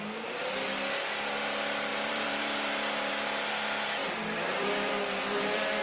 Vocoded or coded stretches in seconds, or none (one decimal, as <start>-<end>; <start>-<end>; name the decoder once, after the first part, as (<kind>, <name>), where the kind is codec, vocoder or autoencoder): 1.9-3.1 (vocoder, BigVGAN v2); 4.0-5.8